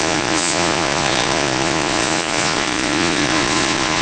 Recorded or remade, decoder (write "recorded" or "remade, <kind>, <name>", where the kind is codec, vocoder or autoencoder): remade, vocoder, Vocos